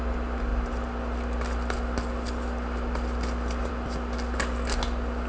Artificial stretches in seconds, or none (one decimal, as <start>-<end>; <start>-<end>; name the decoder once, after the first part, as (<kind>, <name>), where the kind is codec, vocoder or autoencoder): none